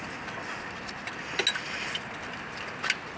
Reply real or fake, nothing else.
real